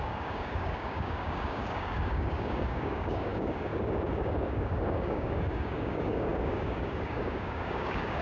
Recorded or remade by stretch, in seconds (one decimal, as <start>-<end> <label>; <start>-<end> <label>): 0.0-8.2 remade